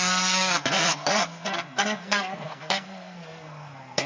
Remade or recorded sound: remade